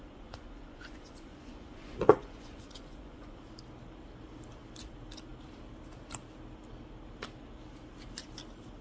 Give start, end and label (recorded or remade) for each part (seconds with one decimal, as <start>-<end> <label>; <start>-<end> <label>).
0.0-3.4 remade; 3.4-8.8 recorded